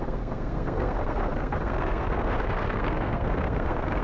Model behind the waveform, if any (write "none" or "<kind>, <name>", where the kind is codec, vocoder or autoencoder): codec, SNAC